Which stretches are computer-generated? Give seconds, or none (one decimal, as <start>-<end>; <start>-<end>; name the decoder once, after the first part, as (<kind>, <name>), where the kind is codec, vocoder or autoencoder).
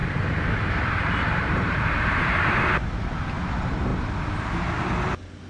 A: 0.0-2.7 (vocoder, BigVGAN v2)